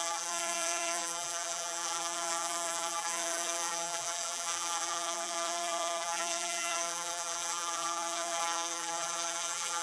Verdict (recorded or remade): remade